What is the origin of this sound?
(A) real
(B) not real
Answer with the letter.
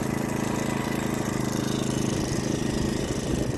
A